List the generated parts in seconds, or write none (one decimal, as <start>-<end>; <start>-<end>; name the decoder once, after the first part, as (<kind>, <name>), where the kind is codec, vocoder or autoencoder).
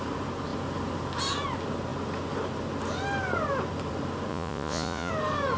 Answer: 4.3-5.1 (vocoder, Vocos)